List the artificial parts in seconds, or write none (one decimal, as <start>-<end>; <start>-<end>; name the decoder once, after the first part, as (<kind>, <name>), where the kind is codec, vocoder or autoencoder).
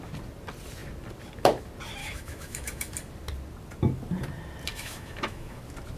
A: 2.0-2.9 (autoencoder, DAC-VAE); 4.7-5.6